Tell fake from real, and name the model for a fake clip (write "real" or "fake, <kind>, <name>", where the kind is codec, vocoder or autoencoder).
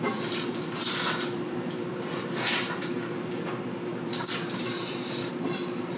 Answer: fake, vocoder, BigVGAN v2